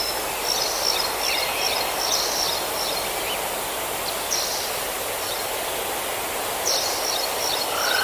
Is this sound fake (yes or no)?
no